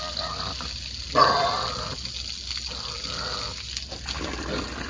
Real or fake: real